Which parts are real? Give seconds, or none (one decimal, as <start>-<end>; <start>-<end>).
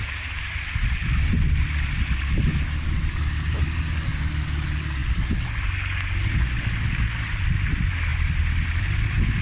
0.0-9.4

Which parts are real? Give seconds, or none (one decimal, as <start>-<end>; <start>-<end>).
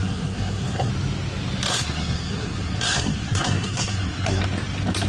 0.9-1.7; 4.4-5.1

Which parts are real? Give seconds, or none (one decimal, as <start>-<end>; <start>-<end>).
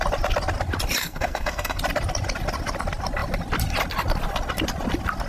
0.0-1.0; 1.8-5.3